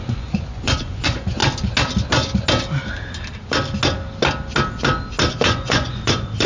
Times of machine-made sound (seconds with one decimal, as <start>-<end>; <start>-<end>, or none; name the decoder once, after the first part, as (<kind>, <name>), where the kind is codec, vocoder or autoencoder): 0.0-1.4 (vocoder, Vocos); 5.3-6.5